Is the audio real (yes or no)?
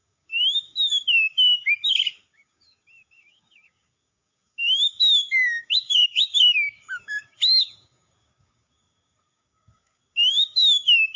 no